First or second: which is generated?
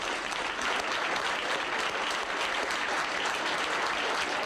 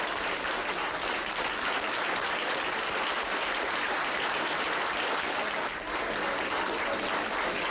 second